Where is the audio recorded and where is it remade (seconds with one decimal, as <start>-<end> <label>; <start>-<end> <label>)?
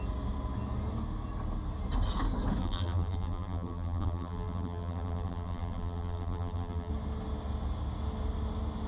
0.0-2.6 recorded; 2.6-6.9 remade; 6.9-8.9 recorded